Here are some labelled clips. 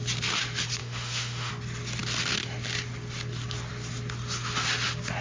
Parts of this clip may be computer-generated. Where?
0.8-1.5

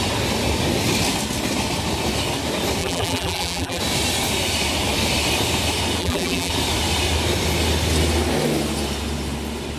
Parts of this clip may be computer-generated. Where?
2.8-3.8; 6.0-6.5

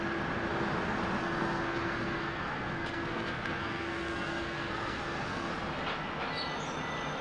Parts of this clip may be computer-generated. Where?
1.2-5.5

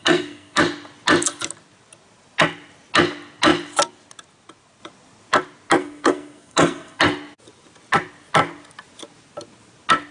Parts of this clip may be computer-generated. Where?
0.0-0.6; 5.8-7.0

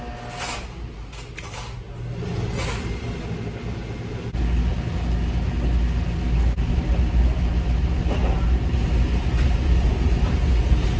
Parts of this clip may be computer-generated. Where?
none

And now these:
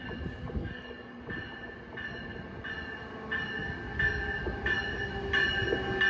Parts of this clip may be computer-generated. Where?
0.6-1.2